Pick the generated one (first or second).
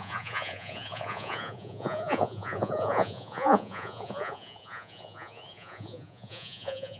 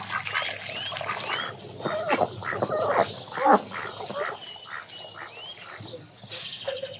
first